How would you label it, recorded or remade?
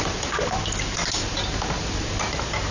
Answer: recorded